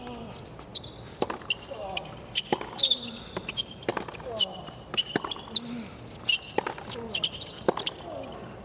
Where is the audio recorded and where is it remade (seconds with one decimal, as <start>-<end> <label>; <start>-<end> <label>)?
0.0-8.6 recorded